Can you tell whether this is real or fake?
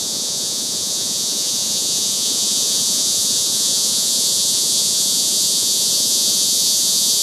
fake